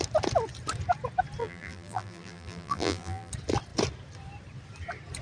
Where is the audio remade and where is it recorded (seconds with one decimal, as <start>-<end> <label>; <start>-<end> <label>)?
0.0-1.4 recorded; 1.4-3.3 remade; 3.3-5.2 recorded